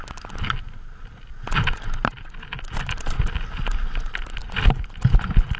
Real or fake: real